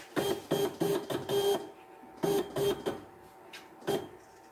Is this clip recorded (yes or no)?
yes